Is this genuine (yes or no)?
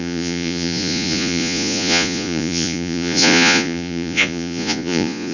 no